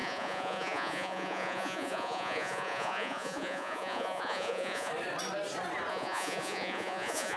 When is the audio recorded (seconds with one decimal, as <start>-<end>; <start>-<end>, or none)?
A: 4.9-5.9